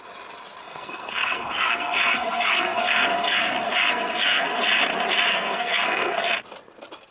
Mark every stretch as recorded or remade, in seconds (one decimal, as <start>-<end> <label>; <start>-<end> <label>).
0.0-0.6 recorded; 0.6-4.6 remade; 4.6-5.3 recorded; 5.3-6.2 remade; 6.2-7.1 recorded